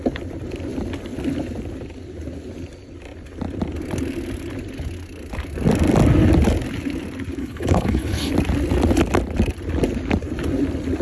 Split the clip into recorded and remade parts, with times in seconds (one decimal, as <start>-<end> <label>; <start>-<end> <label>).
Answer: 0.0-7.4 recorded; 7.4-8.3 remade; 8.3-11.0 recorded